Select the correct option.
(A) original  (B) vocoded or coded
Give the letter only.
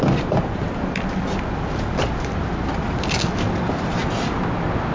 A